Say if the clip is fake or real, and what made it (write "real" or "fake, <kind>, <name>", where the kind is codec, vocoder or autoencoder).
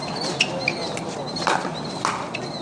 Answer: real